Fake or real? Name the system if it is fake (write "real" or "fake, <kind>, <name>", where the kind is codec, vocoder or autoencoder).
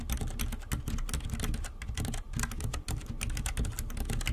real